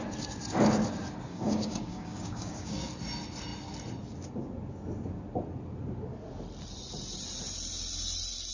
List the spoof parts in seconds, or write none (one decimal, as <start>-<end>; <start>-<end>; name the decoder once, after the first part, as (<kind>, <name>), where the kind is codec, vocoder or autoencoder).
1.3-2.9 (codec, DAC)

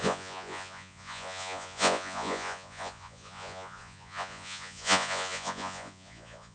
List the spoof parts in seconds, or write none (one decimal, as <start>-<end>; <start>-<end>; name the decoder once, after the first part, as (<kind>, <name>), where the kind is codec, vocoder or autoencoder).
0.0-6.5 (vocoder, Vocos)